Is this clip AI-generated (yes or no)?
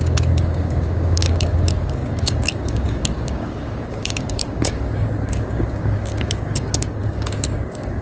yes